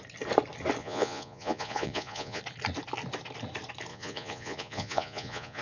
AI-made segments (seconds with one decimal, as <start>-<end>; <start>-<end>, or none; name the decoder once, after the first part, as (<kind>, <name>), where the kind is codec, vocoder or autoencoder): 0.8-2.4 (vocoder, Vocos); 3.9-5.6